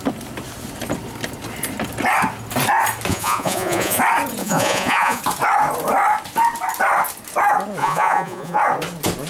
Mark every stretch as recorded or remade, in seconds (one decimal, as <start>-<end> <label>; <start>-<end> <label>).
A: 0.0-3.1 recorded; 3.1-4.0 remade; 4.0-4.4 recorded; 4.4-5.2 remade; 5.2-7.8 recorded; 7.8-8.6 remade; 8.6-9.3 recorded